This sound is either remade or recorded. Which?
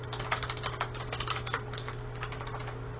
recorded